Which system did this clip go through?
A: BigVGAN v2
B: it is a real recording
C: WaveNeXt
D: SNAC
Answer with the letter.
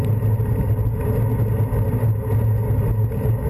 B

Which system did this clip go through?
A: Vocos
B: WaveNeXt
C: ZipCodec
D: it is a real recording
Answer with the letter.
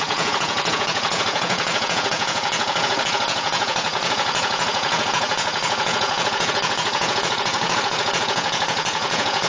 A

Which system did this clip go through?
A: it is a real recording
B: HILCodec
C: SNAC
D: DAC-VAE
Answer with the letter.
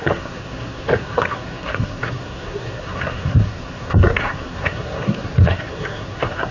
C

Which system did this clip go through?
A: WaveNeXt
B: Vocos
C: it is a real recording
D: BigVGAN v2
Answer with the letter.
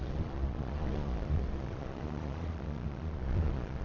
B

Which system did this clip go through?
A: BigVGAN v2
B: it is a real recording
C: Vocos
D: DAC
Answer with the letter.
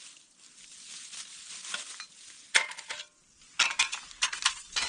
B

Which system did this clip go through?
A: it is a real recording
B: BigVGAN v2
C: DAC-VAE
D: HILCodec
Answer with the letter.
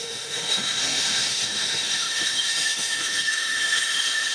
C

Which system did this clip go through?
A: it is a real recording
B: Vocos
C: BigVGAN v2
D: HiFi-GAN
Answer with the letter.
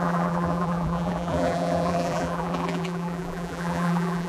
C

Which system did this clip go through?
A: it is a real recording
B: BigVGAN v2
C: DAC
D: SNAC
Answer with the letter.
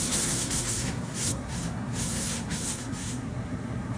D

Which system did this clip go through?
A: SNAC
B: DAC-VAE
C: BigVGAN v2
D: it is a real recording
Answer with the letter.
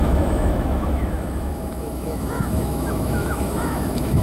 B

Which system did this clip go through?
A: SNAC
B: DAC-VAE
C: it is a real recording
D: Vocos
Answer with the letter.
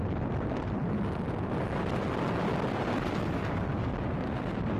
C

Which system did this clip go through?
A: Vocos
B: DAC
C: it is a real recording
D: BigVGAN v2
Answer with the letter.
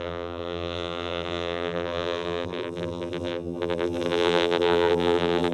D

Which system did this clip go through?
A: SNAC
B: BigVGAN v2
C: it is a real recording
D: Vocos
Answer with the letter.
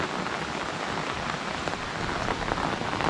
C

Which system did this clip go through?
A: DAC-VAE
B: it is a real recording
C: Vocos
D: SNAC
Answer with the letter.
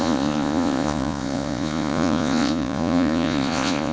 C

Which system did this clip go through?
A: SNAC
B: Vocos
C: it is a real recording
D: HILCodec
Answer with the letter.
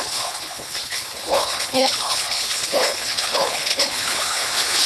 D